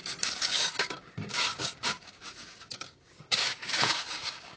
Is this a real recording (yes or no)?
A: no